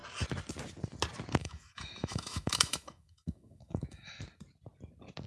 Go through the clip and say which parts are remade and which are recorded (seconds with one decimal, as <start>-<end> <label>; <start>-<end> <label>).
0.0-1.4 recorded; 1.4-4.1 remade; 4.1-5.3 recorded